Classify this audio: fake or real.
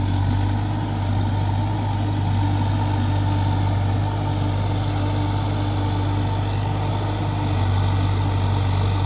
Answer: real